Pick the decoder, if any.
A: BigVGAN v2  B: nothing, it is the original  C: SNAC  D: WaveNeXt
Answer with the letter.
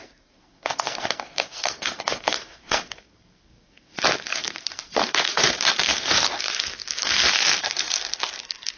C